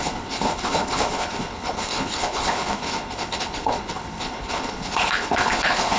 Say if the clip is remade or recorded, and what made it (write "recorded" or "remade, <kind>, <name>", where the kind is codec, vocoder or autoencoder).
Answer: remade, codec, HILCodec